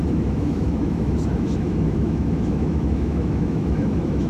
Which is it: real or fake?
fake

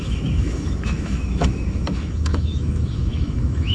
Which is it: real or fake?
fake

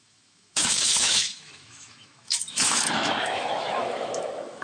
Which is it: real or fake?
fake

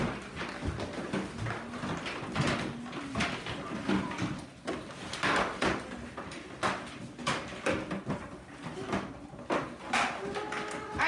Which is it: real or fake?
real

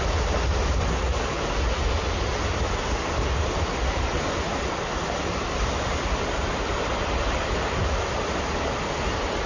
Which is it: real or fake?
real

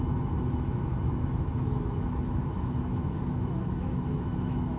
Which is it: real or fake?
fake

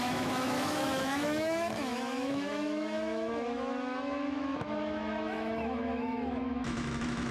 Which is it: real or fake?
fake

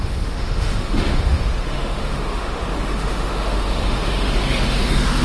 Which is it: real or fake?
fake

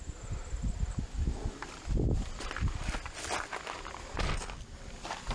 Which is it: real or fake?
real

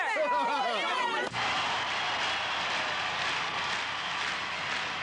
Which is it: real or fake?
real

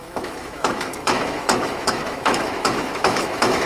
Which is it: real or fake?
fake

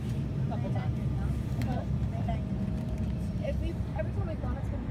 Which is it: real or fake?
real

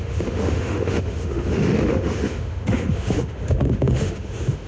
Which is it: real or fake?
fake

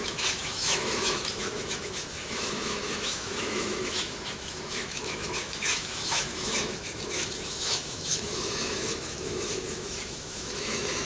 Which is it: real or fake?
fake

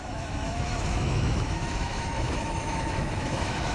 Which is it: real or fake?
fake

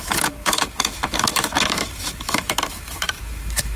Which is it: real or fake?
fake